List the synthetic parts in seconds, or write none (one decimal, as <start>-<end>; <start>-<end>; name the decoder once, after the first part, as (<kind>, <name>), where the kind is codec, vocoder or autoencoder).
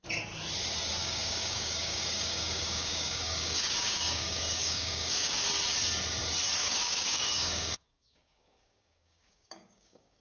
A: 1.0-5.4 (codec, DAC); 6.6-10.2